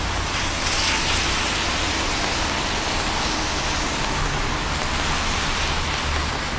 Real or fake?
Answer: real